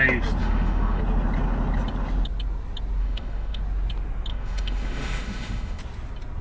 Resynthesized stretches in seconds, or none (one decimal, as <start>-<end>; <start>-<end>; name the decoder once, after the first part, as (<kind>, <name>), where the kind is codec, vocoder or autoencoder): 0.4-1.0 (autoencoder, DAC-VAE); 3.0-3.6; 4.3-5.8